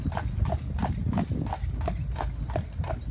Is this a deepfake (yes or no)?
no